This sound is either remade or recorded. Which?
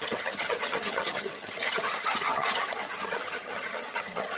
remade